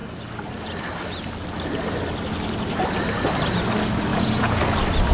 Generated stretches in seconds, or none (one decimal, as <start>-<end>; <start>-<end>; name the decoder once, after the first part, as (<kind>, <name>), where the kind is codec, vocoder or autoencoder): 4.1-4.6 (vocoder, Vocos)